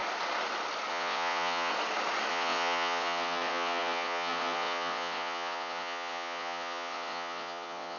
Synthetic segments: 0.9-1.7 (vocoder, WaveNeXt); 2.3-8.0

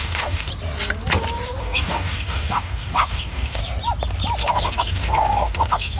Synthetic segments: 0.0-0.5 (codec, DAC); 1.6-3.6; 4.4-6.0